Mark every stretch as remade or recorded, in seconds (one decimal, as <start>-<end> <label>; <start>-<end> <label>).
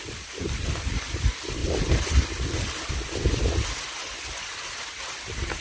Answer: 0.0-5.6 recorded